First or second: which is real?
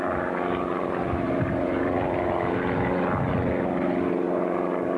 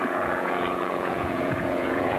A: first